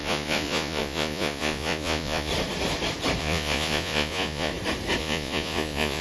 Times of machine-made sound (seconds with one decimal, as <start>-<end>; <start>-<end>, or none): 0.0-2.3; 3.2-4.5; 5.0-6.0